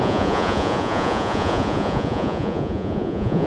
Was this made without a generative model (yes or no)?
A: no